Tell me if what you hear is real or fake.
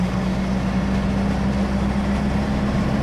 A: real